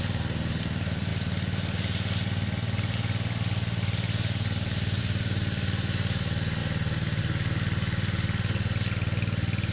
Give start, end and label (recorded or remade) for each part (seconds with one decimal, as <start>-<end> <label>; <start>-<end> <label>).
0.0-9.7 recorded